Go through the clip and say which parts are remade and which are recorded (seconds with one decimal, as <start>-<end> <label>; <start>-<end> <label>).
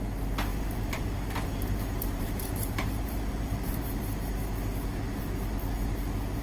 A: 0.0-0.5 recorded; 0.5-4.3 remade; 4.3-6.4 recorded